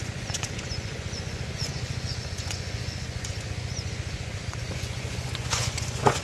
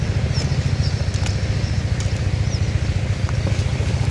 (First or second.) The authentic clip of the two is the second